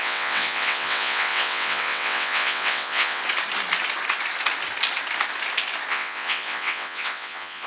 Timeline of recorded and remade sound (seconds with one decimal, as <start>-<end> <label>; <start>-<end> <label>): 0.0-3.2 remade; 3.2-5.9 recorded; 5.9-7.7 remade